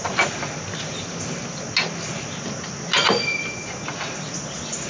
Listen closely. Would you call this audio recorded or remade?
recorded